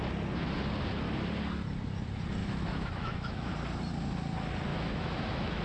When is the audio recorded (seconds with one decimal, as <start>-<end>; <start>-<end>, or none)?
0.0-2.4; 3.5-4.7

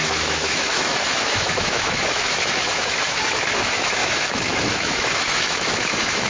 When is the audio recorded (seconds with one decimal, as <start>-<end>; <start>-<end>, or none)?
none